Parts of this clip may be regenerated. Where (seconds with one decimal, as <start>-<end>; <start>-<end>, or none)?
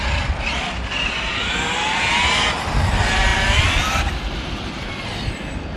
3.3-4.2